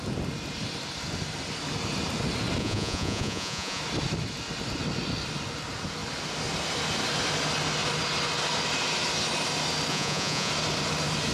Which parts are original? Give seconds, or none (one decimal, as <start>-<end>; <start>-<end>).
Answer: 0.0-2.6; 3.8-9.9; 10.5-11.3